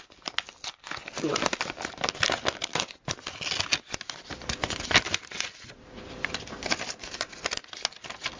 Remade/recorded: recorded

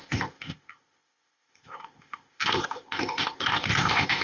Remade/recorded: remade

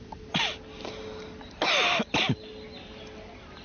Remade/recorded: recorded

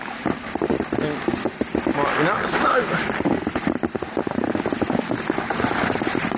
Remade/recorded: recorded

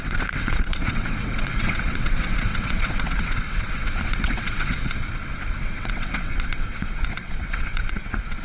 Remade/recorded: remade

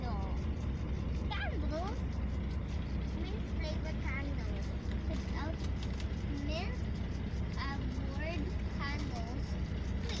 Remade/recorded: recorded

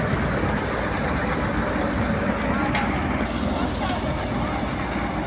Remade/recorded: recorded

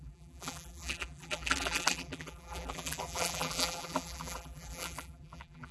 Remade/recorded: remade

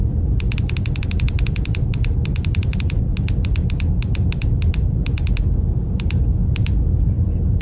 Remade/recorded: recorded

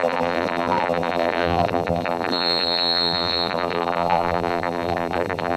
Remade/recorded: remade